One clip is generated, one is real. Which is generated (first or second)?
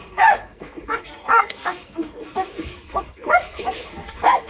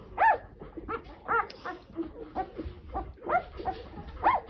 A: first